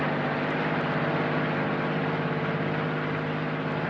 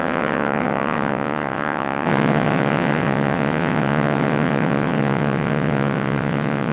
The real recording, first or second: first